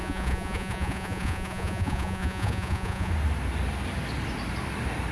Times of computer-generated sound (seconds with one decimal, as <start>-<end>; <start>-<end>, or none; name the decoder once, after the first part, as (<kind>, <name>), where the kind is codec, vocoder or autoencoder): 0.0-3.1 (vocoder, Vocos)